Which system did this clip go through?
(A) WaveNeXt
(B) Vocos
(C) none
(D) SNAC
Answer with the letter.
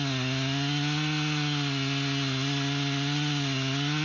C